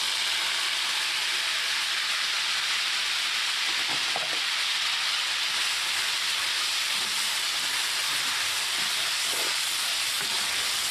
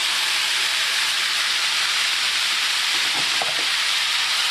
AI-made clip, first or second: second